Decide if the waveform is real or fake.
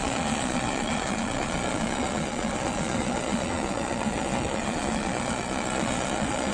fake